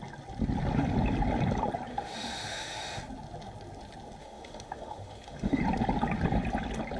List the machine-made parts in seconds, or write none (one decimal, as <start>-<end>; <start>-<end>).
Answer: 1.9-3.0; 4.2-5.6